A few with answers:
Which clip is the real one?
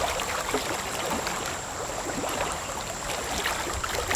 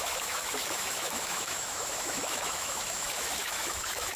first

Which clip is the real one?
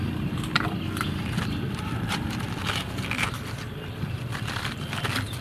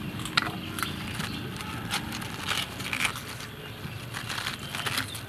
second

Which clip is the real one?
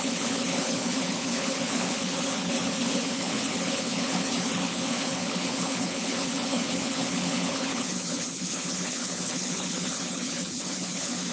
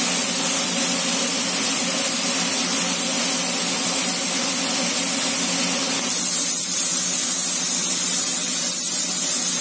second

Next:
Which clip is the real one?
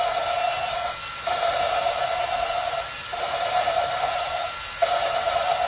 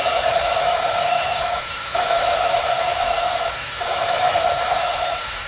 first